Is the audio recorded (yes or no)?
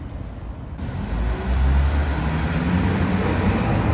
yes